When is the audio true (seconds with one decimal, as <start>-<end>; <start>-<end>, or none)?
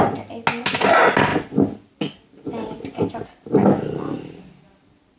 0.0-5.2